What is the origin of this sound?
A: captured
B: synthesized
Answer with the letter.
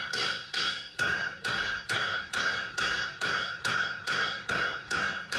B